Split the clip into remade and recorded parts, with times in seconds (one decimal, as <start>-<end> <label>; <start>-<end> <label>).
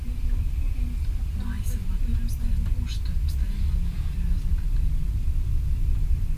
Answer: 0.0-6.4 recorded